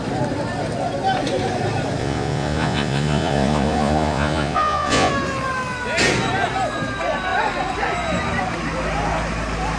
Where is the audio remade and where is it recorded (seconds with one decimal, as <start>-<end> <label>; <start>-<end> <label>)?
0.0-2.0 recorded; 2.0-5.1 remade; 5.1-9.8 recorded